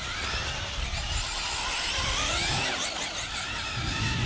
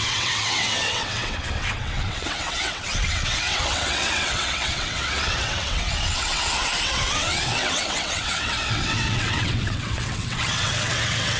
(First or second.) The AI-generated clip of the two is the second